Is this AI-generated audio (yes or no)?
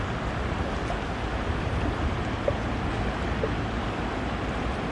no